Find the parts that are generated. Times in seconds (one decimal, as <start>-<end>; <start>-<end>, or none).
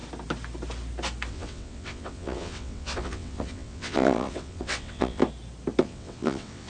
1.3-5.2; 5.8-6.7